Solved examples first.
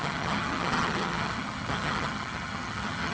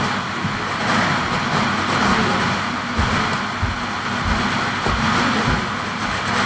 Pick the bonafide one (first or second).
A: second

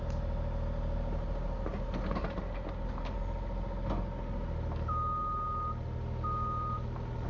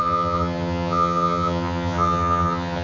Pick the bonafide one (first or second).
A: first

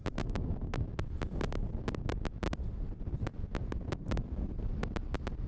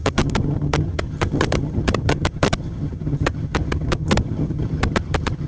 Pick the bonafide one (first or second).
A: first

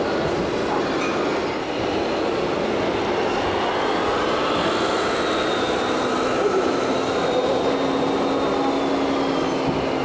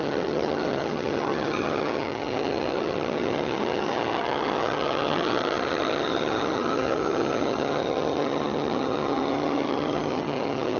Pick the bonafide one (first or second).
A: first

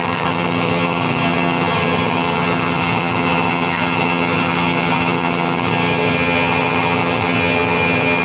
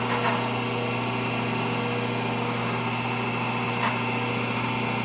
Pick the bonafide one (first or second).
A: second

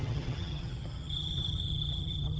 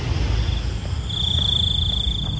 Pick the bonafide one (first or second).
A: second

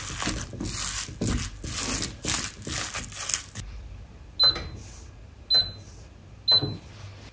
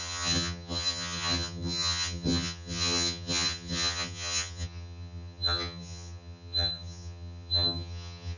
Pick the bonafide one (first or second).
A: first